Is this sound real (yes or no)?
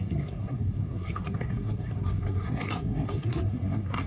no